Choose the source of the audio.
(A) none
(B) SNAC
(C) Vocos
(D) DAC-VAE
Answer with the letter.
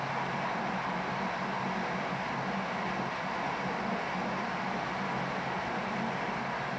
A